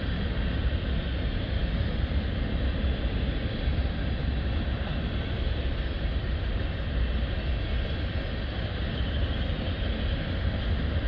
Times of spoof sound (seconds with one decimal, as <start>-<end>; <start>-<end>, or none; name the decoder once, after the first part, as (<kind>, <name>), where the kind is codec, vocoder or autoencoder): none